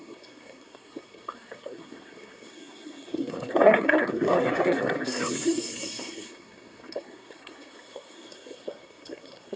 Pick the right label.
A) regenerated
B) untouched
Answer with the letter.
A